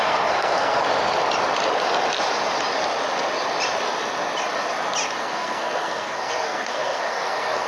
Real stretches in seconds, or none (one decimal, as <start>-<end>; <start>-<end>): 0.8-5.2